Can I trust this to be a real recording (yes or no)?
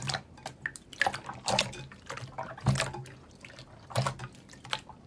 yes